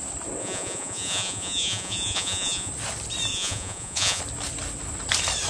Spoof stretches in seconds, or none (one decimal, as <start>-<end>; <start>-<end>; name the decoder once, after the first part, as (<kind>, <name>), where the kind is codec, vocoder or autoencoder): 0.4-2.7 (vocoder, Vocos); 3.3-4.2